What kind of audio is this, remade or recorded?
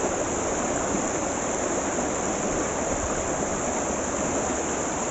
recorded